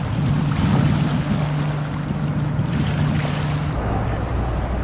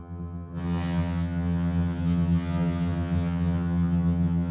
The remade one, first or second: second